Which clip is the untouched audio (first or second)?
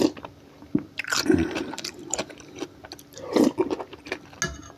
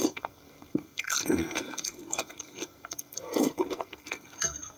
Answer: first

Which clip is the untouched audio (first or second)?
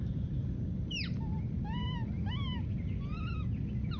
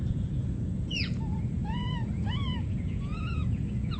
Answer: first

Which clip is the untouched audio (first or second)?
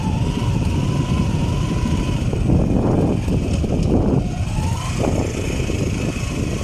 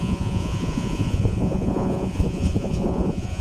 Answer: first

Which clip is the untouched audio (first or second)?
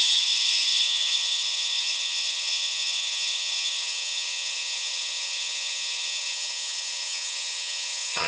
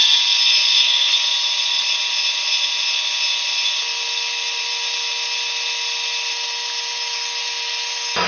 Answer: second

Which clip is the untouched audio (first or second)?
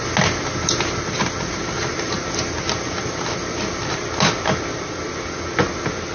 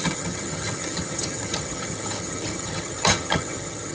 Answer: first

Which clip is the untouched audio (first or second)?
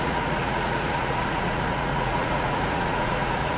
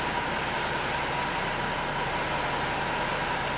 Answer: second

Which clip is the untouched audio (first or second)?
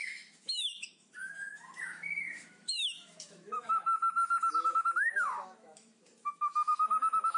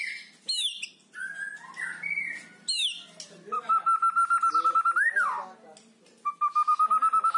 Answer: second